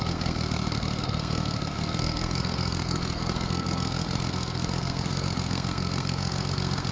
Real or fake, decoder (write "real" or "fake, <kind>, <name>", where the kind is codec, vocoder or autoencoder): fake, codec, SNAC